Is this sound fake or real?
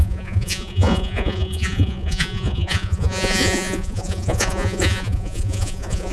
fake